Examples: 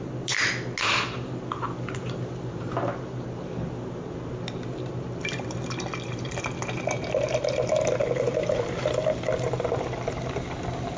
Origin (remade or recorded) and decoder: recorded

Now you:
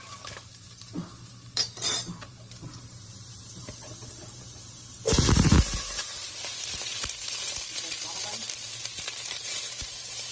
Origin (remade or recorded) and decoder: remade, vocoder, BigVGAN v2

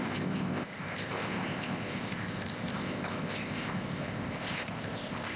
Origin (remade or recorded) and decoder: remade, codec, ZipCodec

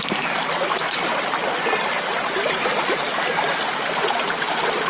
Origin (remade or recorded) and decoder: recorded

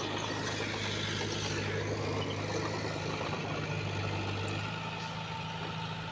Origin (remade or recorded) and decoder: recorded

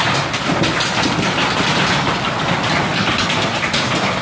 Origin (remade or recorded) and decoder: recorded